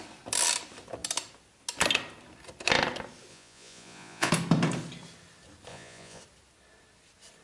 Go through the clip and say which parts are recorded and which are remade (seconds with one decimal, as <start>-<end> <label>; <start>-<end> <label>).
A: 0.0-3.3 recorded; 3.3-4.3 remade; 4.3-5.7 recorded; 5.7-6.2 remade; 6.2-7.4 recorded